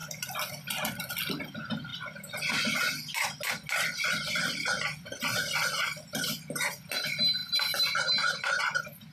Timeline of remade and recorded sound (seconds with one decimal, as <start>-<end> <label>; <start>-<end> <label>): 0.0-9.1 recorded